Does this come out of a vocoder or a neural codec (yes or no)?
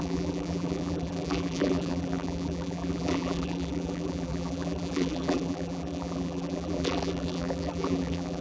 yes